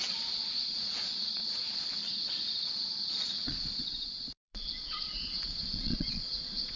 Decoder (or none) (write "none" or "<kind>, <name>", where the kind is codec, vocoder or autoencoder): vocoder, Vocos